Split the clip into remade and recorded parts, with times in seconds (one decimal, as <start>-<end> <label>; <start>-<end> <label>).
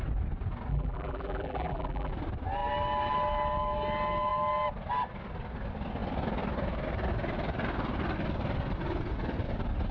0.0-0.7 recorded; 0.7-2.1 remade; 2.1-9.9 recorded